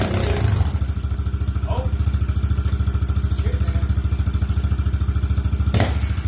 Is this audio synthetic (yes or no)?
no